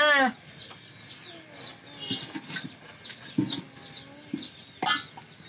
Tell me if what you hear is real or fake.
real